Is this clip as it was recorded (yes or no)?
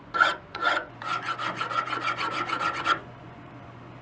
no